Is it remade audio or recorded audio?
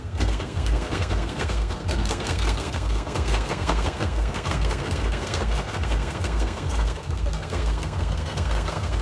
remade